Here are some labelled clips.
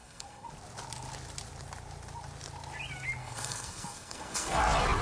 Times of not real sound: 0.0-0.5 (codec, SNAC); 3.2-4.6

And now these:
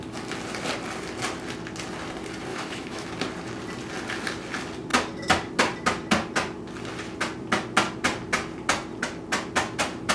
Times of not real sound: 2.5-3.1 (autoencoder, DAC-VAE)

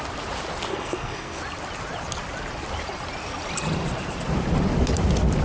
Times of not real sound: 0.7-1.4 (codec, SNAC)